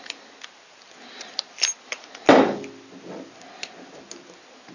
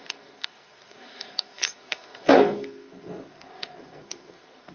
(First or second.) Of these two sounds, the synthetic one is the second